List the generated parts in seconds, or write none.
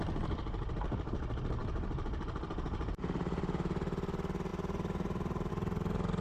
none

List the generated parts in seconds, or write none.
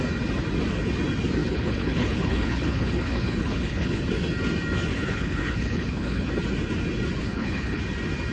1.4-4.0 (codec, HILCodec); 4.9-6.3; 7.2-7.8